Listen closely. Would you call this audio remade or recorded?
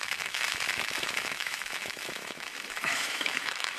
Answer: remade